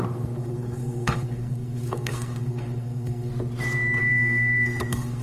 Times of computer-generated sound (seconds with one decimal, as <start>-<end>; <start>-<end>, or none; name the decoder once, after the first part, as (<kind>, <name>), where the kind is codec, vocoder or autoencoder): 0.0-3.3 (codec, SNAC); 4.0-5.2